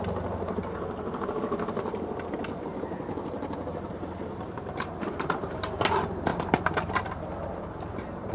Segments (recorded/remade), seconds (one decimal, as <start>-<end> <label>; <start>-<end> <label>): 0.0-2.7 recorded; 2.7-5.7 remade; 5.7-6.3 recorded; 6.3-8.3 remade